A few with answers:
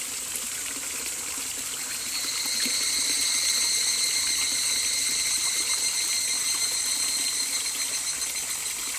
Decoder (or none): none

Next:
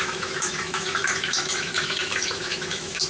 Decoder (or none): autoencoder, DAC-VAE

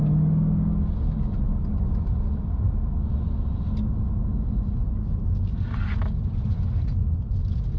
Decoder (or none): none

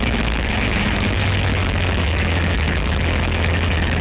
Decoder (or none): autoencoder, DAC-VAE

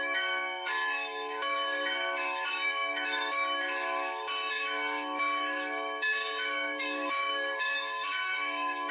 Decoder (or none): autoencoder, DAC-VAE